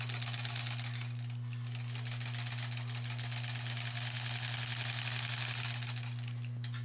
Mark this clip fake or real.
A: real